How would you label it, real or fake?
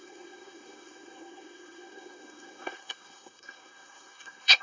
fake